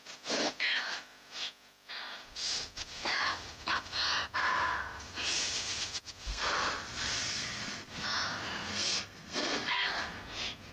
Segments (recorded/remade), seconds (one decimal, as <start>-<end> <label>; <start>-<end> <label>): 0.0-6.3 recorded; 6.3-7.9 remade; 7.9-8.7 recorded; 8.7-10.0 remade; 10.0-10.7 recorded